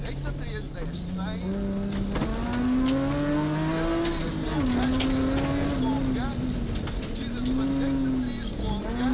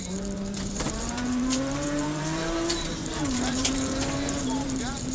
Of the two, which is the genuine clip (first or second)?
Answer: first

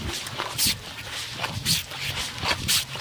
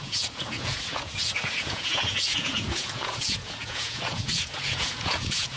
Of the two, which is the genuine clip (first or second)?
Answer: first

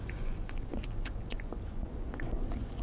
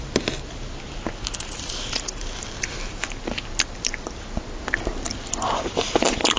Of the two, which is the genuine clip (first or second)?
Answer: second